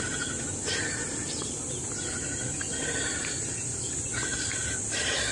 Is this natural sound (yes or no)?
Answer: yes